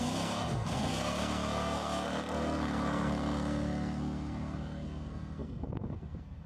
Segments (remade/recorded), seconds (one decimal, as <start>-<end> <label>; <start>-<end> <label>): 0.0-6.5 remade